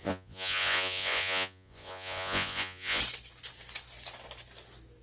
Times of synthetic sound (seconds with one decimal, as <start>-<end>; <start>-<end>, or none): 0.0-3.0